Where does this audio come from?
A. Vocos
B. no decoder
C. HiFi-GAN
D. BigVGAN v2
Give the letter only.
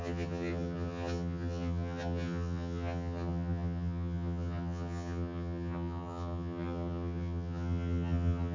C